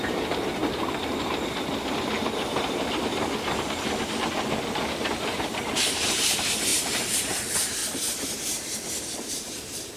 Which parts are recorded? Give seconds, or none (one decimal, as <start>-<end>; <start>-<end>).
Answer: 0.6-5.8; 7.8-9.0